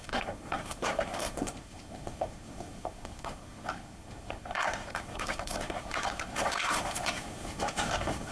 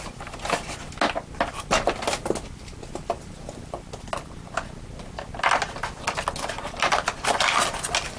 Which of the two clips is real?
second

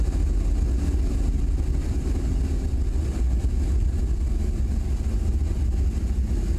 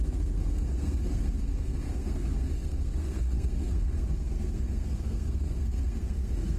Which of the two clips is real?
first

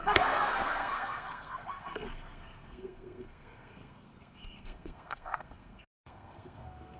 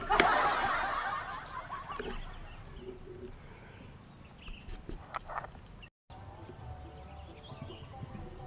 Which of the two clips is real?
second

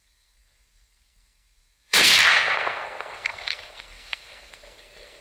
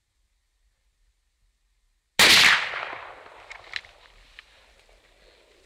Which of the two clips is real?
second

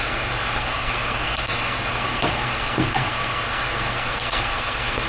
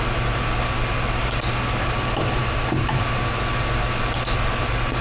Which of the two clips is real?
second